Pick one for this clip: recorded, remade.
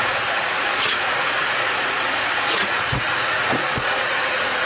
remade